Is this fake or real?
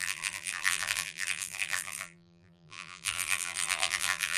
fake